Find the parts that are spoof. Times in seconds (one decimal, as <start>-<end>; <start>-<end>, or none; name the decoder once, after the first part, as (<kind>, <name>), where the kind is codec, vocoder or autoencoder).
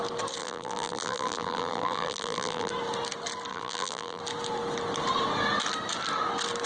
0.4-2.7 (vocoder, BigVGAN v2); 3.5-4.2